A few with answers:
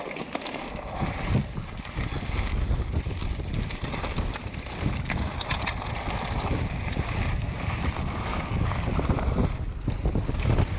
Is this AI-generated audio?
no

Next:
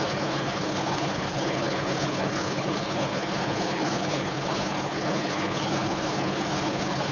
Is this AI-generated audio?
yes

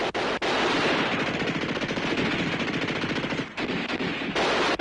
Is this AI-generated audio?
no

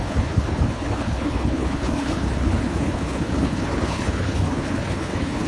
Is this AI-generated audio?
yes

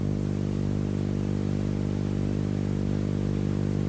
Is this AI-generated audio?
no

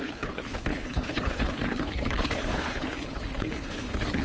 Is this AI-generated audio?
yes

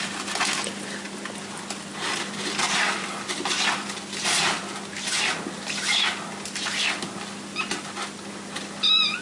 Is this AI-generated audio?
no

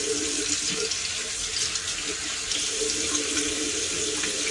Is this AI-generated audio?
no